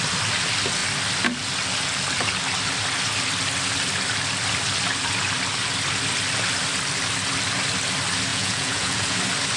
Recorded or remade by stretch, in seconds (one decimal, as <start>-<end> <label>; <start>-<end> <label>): 0.0-8.3 recorded; 8.3-9.2 remade; 9.2-9.6 recorded